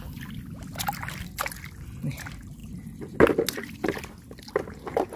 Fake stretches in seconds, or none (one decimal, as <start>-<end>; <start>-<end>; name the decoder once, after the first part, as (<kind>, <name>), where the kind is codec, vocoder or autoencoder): none

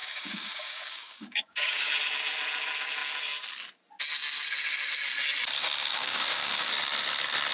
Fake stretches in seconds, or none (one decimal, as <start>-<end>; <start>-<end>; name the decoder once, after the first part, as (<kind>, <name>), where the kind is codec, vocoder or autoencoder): 0.0-1.9 (codec, DAC); 5.9-6.7

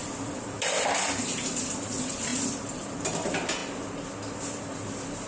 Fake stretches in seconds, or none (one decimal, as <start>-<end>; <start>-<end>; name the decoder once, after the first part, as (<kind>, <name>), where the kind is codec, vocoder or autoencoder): 0.0-1.0 (vocoder, BigVGAN v2)